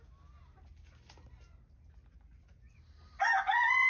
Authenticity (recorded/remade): recorded